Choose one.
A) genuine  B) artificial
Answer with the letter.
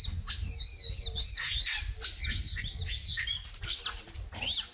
A